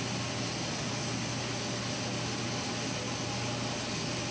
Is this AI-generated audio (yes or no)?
no